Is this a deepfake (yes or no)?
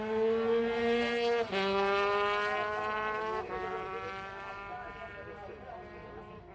no